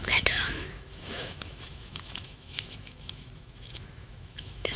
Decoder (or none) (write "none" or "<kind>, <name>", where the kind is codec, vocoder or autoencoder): autoencoder, DAC-VAE